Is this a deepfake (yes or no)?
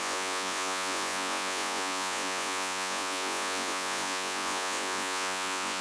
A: yes